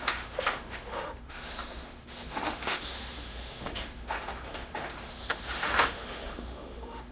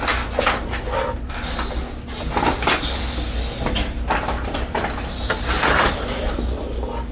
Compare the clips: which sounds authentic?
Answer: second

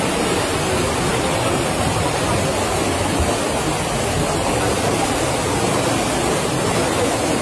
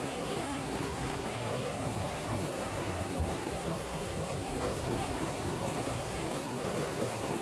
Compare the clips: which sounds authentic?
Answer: first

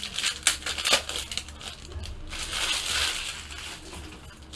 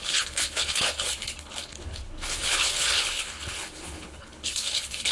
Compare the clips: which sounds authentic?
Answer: first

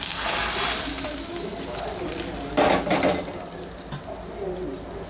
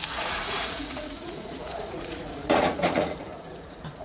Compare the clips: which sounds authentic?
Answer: first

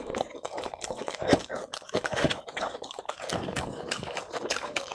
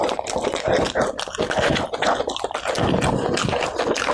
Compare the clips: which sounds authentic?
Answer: second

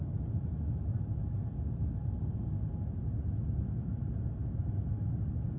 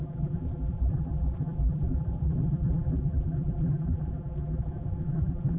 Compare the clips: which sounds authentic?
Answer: first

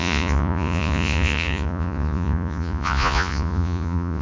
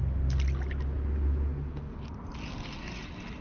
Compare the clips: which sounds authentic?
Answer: second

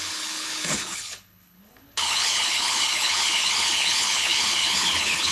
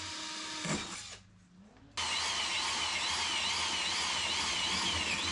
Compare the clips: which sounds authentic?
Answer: second